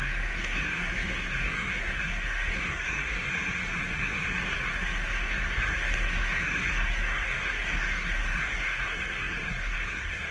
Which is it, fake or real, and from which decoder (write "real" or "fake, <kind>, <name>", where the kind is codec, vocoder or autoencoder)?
fake, codec, SNAC